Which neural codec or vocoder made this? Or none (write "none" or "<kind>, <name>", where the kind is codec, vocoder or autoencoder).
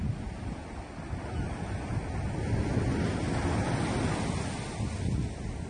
none